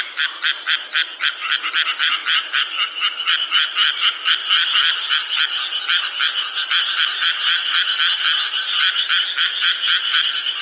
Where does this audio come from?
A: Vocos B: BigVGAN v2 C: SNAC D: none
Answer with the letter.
D